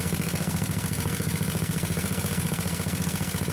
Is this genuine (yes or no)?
no